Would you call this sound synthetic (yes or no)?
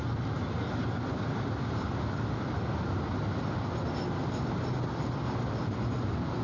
no